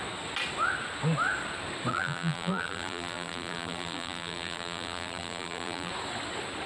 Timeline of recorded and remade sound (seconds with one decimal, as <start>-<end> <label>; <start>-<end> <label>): 0.0-1.9 recorded; 1.9-5.9 remade; 5.9-6.7 recorded